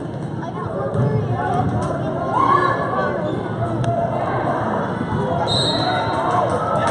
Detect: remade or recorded recorded